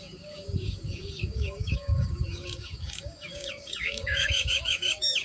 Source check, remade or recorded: remade